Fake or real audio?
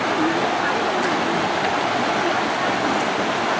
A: real